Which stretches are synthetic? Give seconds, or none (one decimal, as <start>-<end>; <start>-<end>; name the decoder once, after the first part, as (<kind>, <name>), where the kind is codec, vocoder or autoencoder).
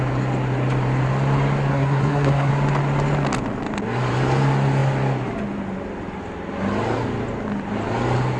1.7-2.5 (codec, SNAC)